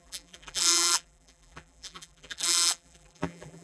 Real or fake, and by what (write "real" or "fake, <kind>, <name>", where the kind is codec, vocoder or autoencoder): fake, vocoder, BigVGAN v2